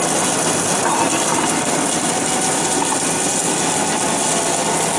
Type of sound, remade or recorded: recorded